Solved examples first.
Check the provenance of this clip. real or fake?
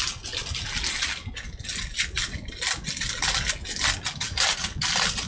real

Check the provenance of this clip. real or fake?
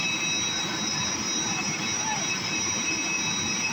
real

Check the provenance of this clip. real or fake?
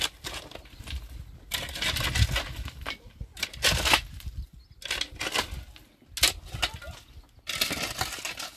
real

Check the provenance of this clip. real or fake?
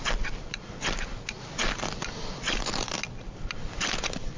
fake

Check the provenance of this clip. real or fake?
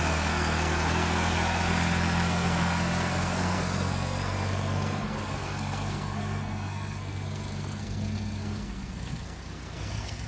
fake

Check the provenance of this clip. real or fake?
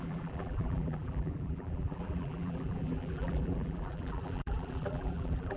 fake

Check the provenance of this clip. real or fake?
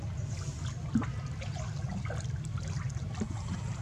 real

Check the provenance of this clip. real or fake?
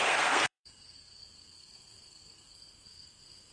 fake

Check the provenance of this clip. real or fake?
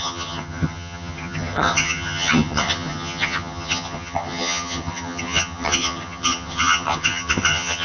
fake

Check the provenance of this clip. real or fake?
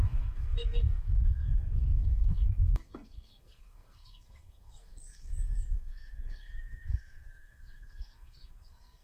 fake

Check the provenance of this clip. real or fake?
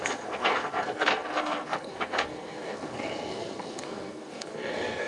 fake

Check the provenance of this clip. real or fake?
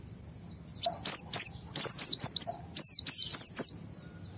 real